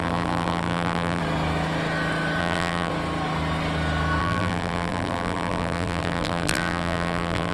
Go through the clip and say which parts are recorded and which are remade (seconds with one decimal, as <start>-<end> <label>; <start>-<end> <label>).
0.0-1.2 remade; 1.2-2.4 recorded; 2.4-2.9 remade; 2.9-4.2 recorded; 4.2-7.5 remade